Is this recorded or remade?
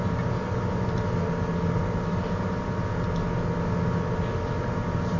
recorded